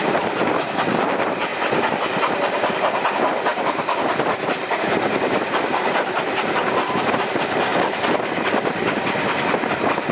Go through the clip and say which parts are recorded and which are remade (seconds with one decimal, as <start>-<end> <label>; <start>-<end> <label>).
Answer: 0.0-1.5 recorded; 1.5-2.0 remade; 2.0-3.5 recorded; 3.5-6.4 remade; 6.4-10.1 recorded